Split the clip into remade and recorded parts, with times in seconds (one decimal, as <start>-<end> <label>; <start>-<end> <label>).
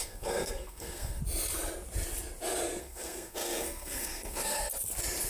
0.0-1.2 remade; 1.2-2.8 recorded; 2.8-4.7 remade; 4.7-5.3 recorded